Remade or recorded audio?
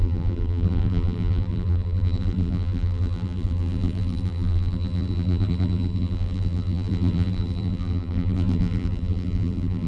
remade